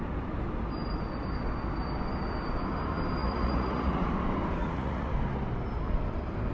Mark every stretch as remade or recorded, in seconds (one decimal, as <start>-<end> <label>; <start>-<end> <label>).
0.0-3.2 recorded; 3.2-4.1 remade; 4.1-4.6 recorded; 4.6-5.1 remade; 5.1-6.5 recorded